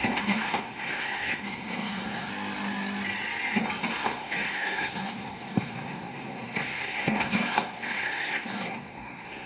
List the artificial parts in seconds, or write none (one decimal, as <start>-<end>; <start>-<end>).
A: 0.0-2.3; 3.9-9.5